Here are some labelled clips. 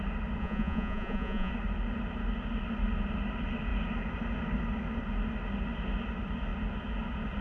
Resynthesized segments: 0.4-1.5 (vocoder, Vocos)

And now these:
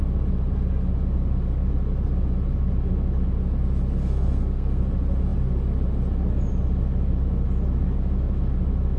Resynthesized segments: 4.0-4.8 (codec, SNAC)

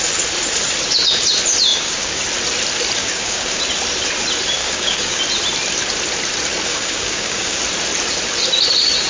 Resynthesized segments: 1.7-2.2 (codec, DAC); 3.0-3.6; 4.6-5.2; 6.7-7.6

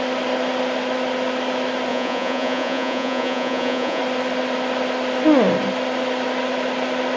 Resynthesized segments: 1.9-4.0 (vocoder, Vocos)

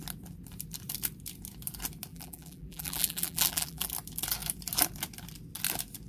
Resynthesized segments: 2.1-3.9 (vocoder, BigVGAN v2)

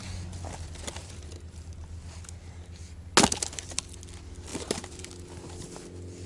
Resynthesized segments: 1.0-1.8 (vocoder, BigVGAN v2); 4.5-5.1

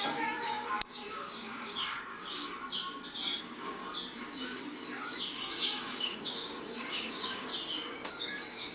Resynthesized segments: 0.0-2.1 (codec, DAC); 3.4-3.8; 4.4-7.5; 8.1-8.7